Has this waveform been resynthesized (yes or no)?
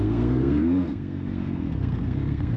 yes